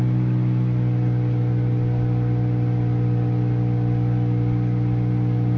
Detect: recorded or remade recorded